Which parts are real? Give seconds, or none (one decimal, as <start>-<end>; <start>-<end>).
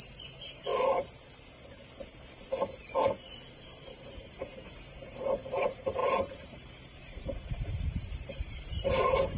0.7-3.5